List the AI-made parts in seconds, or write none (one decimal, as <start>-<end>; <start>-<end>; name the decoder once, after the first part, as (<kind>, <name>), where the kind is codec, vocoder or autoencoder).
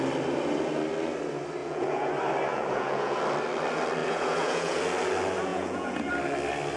1.6-2.1 (vocoder, Vocos); 2.5-3.2; 4.0-4.8; 5.5-6.1